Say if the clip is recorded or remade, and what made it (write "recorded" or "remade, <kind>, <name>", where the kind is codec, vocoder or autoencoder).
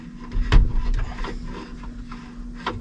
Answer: recorded